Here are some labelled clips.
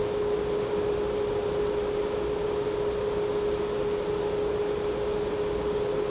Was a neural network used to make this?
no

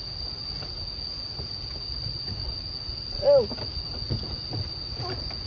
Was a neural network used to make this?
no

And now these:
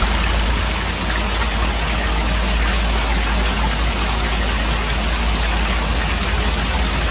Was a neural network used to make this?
no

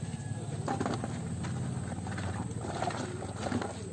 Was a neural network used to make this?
no